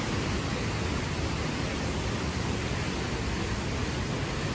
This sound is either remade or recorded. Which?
recorded